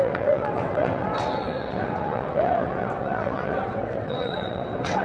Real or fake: fake